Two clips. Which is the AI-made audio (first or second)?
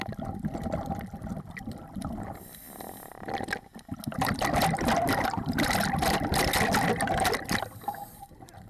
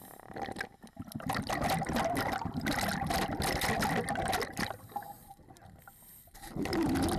first